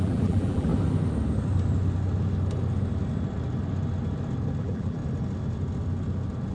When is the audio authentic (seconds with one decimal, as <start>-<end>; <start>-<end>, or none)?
0.7-4.6; 5.0-6.5